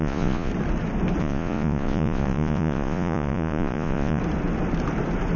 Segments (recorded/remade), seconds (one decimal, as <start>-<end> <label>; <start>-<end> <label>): 0.0-0.5 remade; 0.5-1.2 recorded; 1.2-4.2 remade; 4.2-5.4 recorded